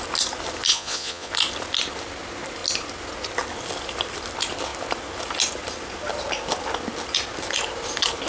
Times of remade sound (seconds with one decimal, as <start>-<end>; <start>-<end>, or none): 0.7-1.3